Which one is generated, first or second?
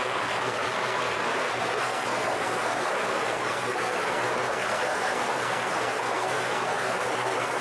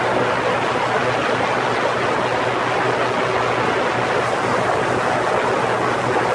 first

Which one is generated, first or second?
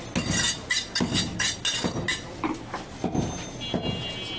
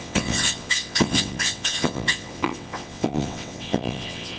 second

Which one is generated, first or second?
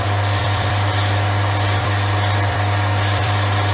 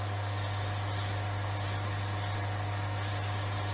first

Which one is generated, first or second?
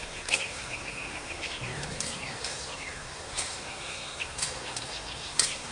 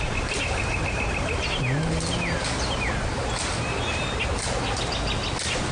first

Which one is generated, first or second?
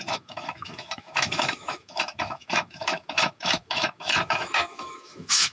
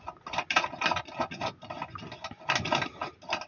first